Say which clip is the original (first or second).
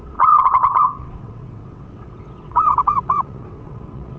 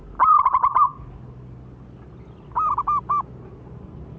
second